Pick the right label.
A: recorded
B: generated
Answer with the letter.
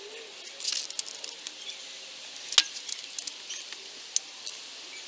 A